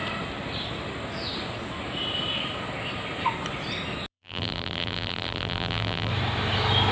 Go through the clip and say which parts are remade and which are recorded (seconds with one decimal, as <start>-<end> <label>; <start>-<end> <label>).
0.0-4.1 recorded; 4.1-6.1 remade; 6.1-6.9 recorded